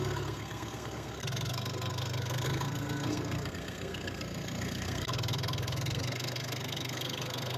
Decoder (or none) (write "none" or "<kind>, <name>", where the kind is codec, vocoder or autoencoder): codec, SNAC